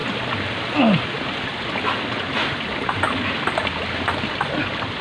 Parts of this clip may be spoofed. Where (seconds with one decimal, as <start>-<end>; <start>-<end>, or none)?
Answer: none